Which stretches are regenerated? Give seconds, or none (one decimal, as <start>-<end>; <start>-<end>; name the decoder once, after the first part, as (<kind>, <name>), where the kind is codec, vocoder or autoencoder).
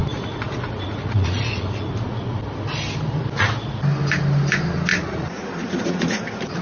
0.0-2.4 (vocoder, Vocos); 4.9-6.6